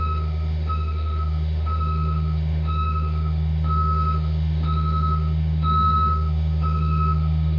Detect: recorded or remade remade